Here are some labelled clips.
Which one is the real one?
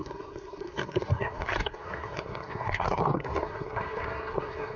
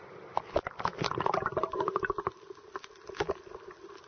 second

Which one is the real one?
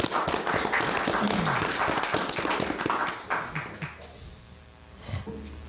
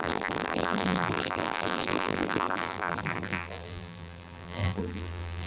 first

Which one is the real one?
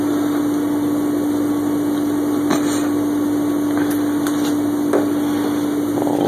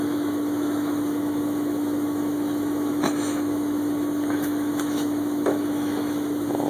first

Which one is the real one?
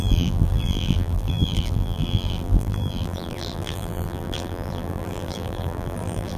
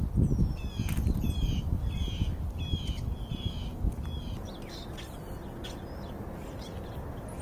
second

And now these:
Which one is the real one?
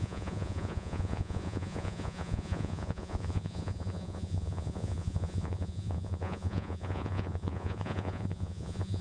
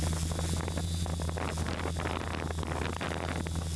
second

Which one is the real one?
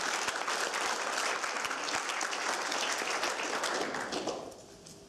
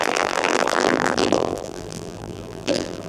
first